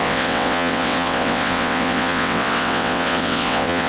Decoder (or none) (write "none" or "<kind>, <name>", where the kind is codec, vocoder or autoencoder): vocoder, WaveNeXt